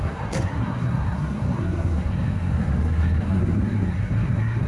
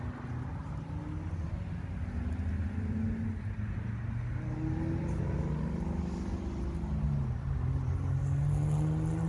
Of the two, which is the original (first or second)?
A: second